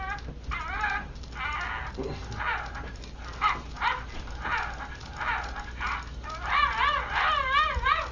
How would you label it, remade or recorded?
recorded